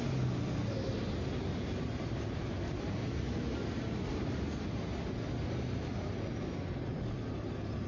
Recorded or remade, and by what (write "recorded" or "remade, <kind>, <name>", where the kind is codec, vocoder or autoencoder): recorded